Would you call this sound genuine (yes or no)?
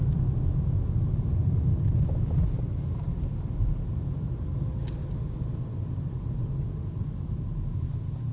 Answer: yes